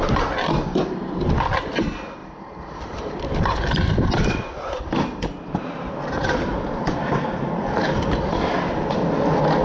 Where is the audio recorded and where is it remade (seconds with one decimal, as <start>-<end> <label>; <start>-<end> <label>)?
0.0-2.2 recorded; 2.2-3.2 remade; 3.2-9.6 recorded